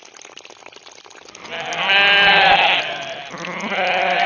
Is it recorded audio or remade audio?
recorded